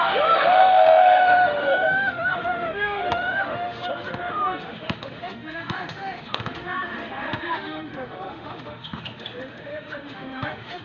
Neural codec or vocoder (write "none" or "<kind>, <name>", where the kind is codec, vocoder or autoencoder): autoencoder, DAC-VAE